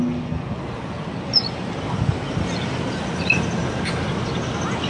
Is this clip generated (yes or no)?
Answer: no